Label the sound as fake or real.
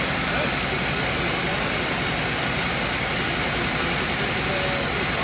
real